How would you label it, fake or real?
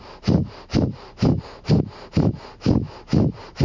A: real